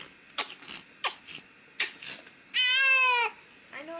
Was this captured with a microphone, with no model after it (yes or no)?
yes